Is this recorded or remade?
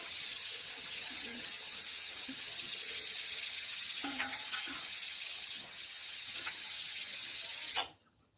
remade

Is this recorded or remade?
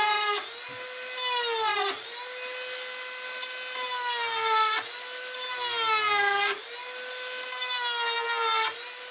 recorded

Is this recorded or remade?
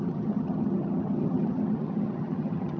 remade